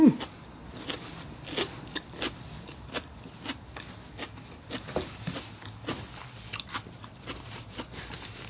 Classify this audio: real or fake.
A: real